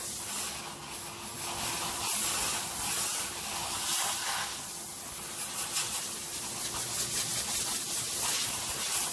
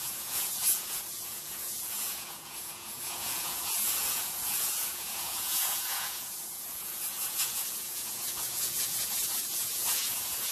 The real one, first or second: first